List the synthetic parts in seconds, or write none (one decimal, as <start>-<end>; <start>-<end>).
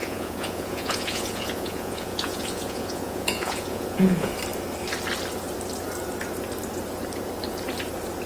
0.0-4.3